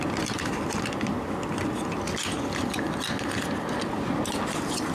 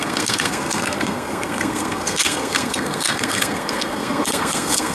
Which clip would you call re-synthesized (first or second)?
second